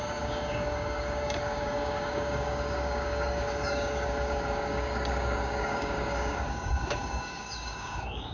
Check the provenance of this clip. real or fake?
fake